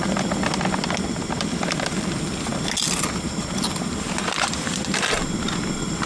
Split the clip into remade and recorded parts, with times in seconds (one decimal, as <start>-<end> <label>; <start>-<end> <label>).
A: 0.0-2.5 remade; 2.5-3.7 recorded; 3.7-6.1 remade